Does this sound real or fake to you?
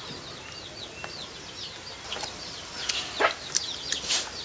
real